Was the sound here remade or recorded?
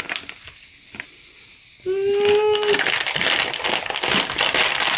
recorded